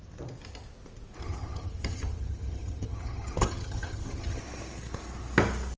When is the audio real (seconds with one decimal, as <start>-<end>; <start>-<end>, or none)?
0.0-1.2; 4.4-5.8